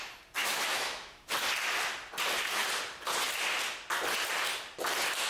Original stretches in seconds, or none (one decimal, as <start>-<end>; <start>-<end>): 0.0-0.4; 1.3-5.3